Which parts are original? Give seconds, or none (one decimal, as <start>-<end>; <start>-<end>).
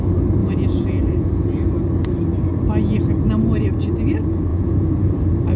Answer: 0.0-0.4; 1.8-4.5; 5.1-5.6